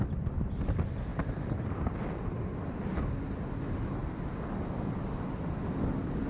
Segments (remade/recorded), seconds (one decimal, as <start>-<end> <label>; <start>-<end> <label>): 0.0-6.3 recorded